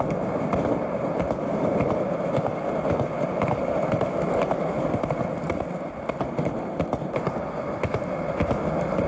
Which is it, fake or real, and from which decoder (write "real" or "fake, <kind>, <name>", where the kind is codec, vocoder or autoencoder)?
real